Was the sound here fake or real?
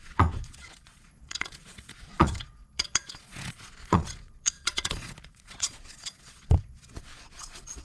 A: fake